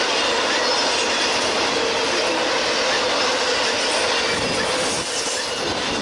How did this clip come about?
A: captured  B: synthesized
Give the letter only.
A